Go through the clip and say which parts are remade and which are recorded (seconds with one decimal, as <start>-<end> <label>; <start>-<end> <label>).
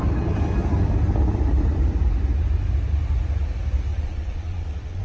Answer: 0.0-3.9 recorded; 3.9-5.0 remade